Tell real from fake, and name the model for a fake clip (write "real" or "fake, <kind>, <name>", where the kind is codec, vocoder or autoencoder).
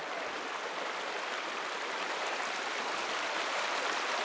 real